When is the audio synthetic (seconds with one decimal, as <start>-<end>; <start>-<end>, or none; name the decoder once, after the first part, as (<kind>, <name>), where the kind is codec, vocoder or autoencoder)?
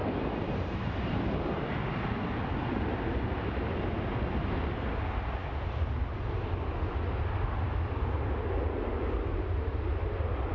none